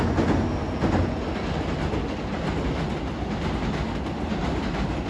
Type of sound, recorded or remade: recorded